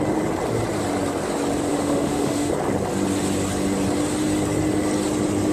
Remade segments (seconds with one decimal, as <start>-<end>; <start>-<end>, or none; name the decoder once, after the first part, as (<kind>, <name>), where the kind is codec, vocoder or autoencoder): 1.7-2.5 (autoencoder, DAC-VAE)